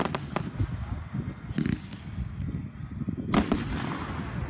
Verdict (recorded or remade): recorded